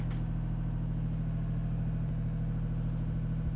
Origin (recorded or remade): recorded